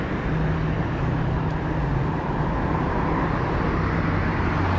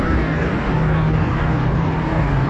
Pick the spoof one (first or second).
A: second